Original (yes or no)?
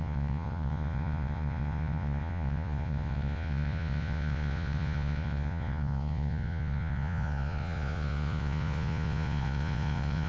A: no